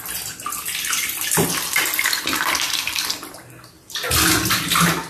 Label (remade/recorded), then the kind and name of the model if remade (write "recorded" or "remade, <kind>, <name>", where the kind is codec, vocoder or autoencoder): recorded